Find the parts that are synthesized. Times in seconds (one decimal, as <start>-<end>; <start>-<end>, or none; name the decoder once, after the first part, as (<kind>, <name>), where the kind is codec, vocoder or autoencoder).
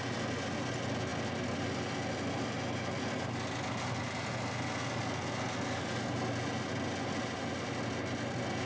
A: none